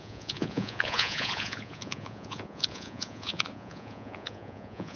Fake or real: fake